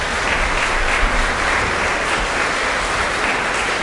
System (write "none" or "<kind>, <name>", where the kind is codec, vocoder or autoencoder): none